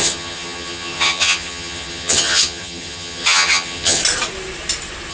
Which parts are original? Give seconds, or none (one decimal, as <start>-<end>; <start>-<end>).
4.0-5.1